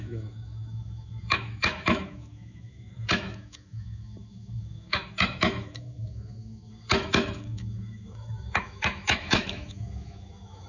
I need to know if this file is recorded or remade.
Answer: remade